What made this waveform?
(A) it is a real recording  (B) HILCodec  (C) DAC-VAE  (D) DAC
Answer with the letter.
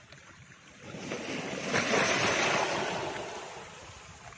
A